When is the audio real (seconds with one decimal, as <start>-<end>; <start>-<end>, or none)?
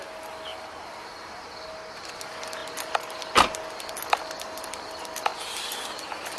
0.0-0.5; 1.3-6.4